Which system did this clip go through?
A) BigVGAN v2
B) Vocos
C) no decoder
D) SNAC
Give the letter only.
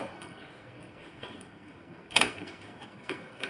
D